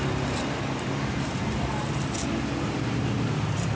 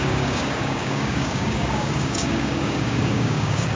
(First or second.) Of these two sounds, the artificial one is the second